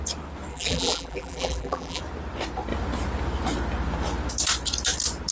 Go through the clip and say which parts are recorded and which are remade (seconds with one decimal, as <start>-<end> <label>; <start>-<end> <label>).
0.0-0.5 recorded; 0.5-2.0 remade; 2.0-5.3 recorded